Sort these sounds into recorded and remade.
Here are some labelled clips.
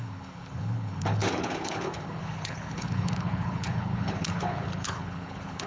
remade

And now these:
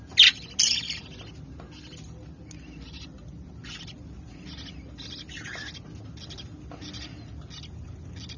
recorded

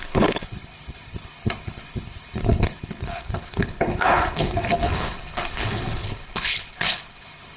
remade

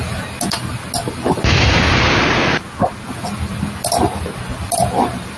recorded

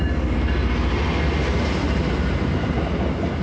recorded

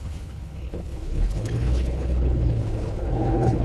remade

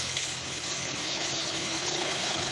remade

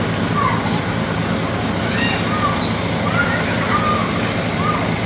recorded